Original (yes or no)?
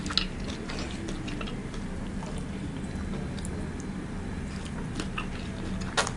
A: yes